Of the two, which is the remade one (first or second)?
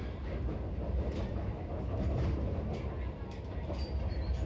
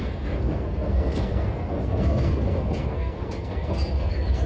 second